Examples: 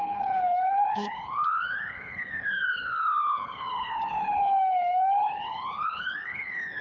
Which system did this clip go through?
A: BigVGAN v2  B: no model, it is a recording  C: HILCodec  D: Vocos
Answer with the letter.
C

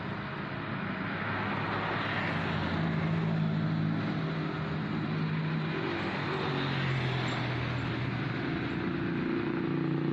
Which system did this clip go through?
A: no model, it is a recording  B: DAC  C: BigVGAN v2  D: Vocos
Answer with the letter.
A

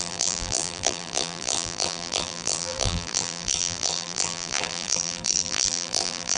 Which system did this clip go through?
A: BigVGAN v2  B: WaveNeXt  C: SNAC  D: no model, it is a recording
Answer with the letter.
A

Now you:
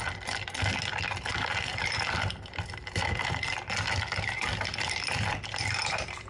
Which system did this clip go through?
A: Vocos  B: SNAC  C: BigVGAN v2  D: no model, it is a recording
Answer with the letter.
D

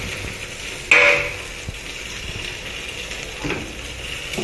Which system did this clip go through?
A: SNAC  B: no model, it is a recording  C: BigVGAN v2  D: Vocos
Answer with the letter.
B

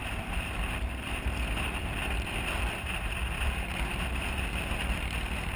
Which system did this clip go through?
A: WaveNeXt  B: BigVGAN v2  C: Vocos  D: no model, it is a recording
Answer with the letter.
B